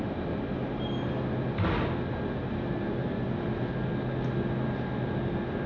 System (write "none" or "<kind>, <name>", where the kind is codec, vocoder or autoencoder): none